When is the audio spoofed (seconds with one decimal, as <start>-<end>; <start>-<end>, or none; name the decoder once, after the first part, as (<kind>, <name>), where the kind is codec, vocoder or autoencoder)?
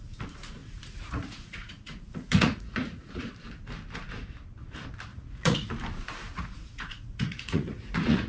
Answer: 0.6-3.3 (vocoder, Vocos); 5.1-5.7; 6.3-8.3